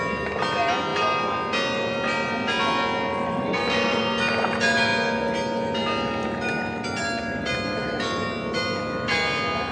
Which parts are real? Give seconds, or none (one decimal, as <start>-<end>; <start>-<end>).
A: 0.0-3.1; 4.0-9.7